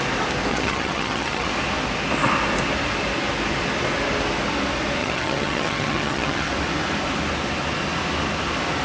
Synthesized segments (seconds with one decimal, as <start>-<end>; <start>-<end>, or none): 0.5-1.5; 5.0-6.5